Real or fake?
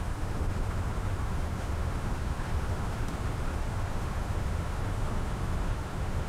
fake